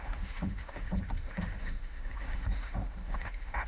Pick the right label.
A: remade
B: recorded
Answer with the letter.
A